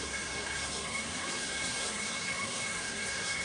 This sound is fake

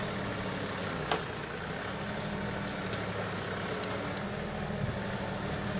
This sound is real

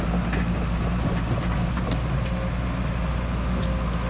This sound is real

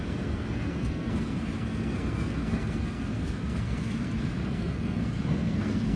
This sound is fake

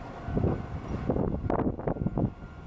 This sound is real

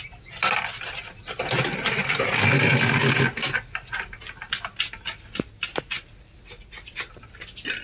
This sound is real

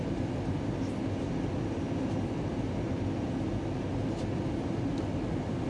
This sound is real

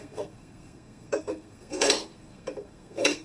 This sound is fake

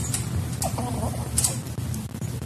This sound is real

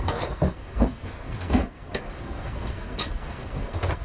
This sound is fake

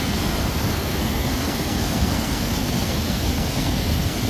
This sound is fake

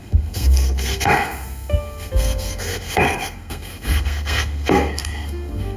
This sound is fake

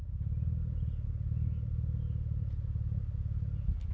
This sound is real